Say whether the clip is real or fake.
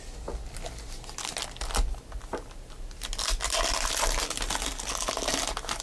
real